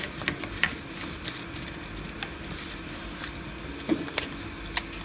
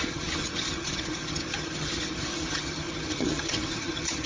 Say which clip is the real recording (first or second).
first